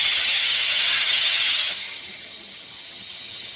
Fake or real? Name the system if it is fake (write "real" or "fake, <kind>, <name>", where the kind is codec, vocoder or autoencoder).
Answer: fake, vocoder, HiFi-GAN